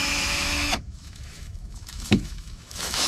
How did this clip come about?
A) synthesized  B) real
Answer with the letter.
A